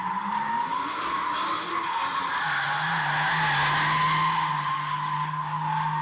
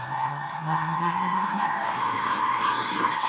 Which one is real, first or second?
first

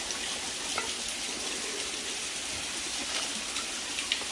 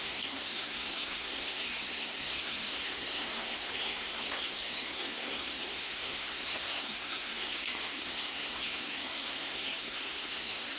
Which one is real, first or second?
first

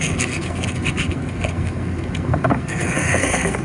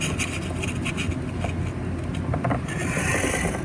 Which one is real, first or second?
second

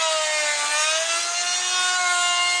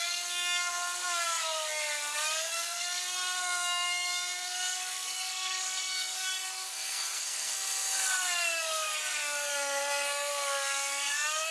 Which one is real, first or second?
first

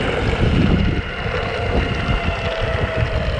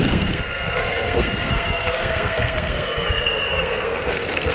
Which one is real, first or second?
first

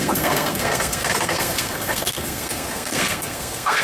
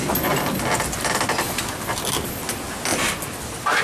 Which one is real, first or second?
second